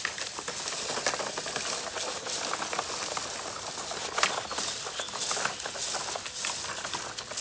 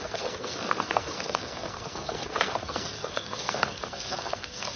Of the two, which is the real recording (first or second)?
first